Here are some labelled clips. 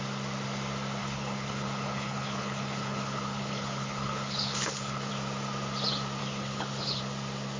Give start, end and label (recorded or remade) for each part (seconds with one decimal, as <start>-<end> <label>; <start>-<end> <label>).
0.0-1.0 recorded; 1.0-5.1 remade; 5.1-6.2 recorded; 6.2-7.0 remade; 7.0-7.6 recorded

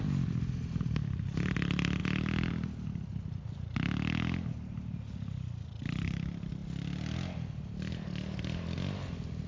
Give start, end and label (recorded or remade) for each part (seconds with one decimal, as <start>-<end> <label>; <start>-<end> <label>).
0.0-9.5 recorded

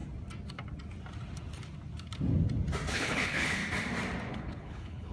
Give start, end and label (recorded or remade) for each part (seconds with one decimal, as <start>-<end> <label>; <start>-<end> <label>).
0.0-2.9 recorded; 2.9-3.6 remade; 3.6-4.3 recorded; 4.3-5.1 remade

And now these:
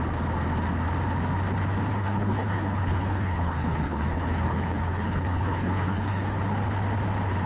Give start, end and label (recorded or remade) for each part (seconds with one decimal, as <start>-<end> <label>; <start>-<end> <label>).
0.0-1.9 recorded; 1.9-6.4 remade; 6.4-7.5 recorded

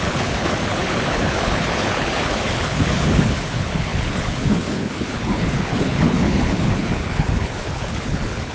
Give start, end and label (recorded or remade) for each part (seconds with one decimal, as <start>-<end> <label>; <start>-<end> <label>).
0.0-8.5 remade

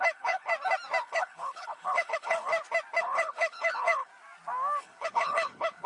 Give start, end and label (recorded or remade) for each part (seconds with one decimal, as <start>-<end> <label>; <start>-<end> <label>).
0.0-0.5 remade; 0.5-1.0 recorded; 1.0-2.5 remade; 2.5-3.0 recorded; 3.0-4.1 remade; 4.1-4.8 recorded; 4.8-5.9 remade

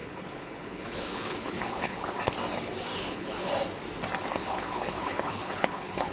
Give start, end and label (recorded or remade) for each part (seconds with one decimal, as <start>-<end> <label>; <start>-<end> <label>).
0.0-2.1 remade; 2.1-2.9 recorded; 2.9-3.5 remade; 3.5-4.4 recorded; 4.4-6.1 remade